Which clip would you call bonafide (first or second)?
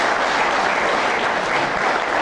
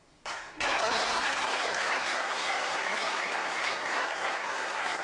first